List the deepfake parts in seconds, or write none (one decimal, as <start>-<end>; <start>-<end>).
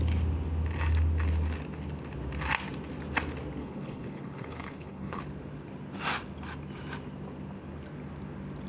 3.6-5.2